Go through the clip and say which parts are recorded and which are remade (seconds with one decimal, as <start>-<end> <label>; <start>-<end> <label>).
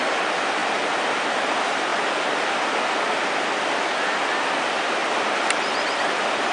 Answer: 0.0-0.6 remade; 0.6-1.3 recorded; 1.3-1.9 remade; 1.9-2.9 recorded; 2.9-5.0 remade; 5.0-5.5 recorded; 5.5-6.5 remade